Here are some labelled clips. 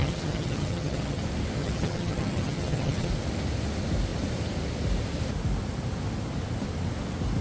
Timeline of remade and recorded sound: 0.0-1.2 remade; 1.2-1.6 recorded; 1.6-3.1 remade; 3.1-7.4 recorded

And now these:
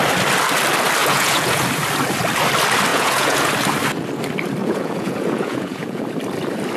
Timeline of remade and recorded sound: 0.0-1.0 recorded; 1.0-1.6 remade; 1.6-2.9 recorded; 2.9-3.5 remade; 3.5-4.6 recorded; 4.6-6.0 remade; 6.0-6.8 recorded

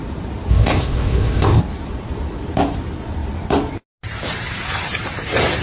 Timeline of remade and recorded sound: 0.0-0.5 recorded; 0.5-1.6 remade; 1.6-5.6 recorded